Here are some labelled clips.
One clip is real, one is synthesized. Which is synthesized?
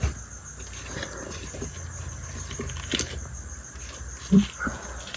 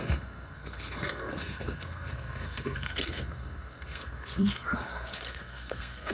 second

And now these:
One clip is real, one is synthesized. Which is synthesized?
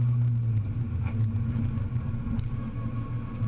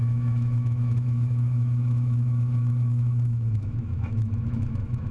second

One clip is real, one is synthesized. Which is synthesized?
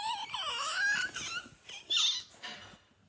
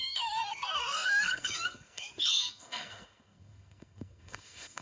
second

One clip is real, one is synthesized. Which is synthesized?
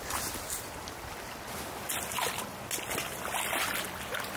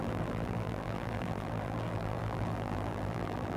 second